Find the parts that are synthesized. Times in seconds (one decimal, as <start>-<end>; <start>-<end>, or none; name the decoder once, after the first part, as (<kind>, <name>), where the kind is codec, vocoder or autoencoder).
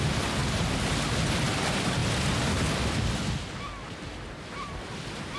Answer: 0.0-0.4 (vocoder, BigVGAN v2); 1.5-5.4